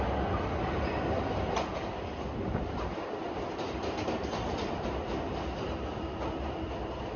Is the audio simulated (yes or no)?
no